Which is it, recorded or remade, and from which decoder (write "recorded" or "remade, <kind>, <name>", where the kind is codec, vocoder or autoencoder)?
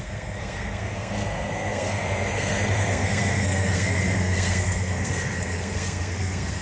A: remade, codec, SNAC